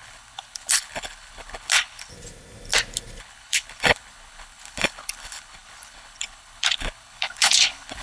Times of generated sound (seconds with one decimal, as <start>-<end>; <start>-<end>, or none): 0.0-2.1; 3.2-8.0